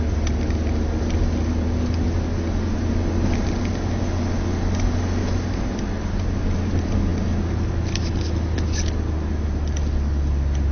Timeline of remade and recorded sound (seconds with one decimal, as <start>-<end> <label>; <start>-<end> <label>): 0.0-10.7 recorded